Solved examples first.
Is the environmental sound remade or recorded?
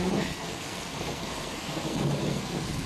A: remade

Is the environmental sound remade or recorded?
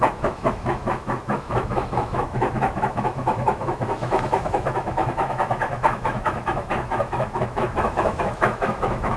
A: remade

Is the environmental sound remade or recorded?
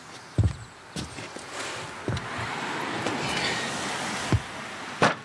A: recorded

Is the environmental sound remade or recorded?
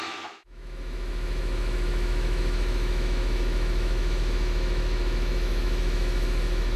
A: remade